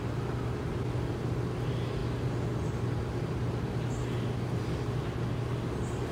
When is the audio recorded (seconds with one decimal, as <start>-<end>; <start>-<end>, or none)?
0.0-6.1